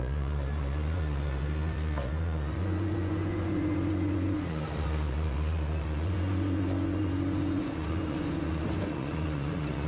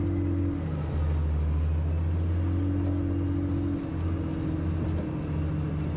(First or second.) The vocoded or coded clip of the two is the first